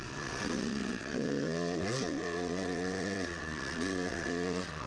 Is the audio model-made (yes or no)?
yes